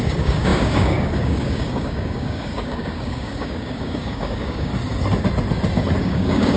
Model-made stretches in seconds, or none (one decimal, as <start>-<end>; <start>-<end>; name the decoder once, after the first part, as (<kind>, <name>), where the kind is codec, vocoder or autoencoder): 0.0-4.7 (codec, DAC); 6.0-6.6